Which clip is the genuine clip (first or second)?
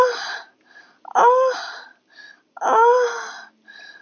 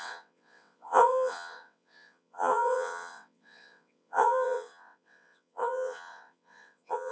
first